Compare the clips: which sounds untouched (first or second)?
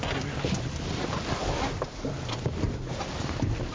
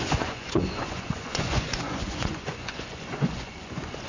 first